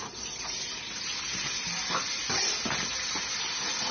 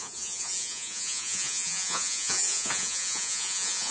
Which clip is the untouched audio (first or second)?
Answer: first